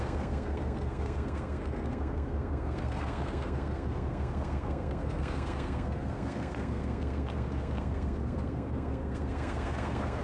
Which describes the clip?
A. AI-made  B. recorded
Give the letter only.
A